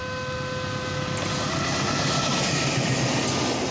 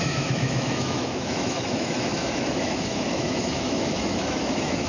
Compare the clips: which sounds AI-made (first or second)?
second